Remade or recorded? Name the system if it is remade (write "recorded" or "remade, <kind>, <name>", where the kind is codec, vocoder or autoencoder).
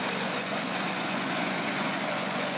remade, vocoder, Vocos